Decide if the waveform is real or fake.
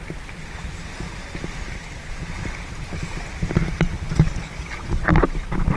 real